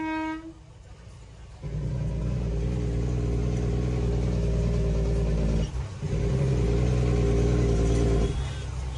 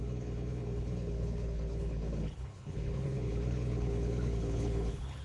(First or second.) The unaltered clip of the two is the first